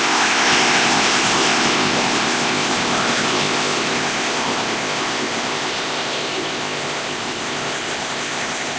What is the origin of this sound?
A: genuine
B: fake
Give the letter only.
B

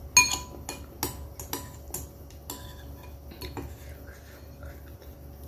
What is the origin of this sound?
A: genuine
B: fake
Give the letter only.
A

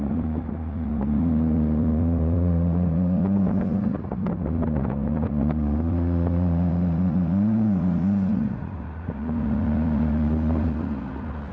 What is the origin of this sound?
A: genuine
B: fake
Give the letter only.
B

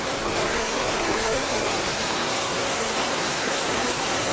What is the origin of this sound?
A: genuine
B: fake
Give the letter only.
B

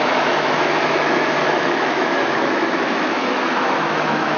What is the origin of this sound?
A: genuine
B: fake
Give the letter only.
B